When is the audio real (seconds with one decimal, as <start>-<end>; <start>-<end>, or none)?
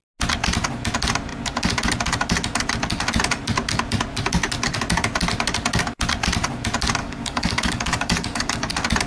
0.0-7.0; 8.7-9.1